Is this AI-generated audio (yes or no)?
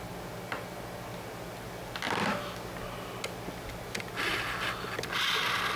no